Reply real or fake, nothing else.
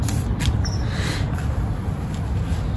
real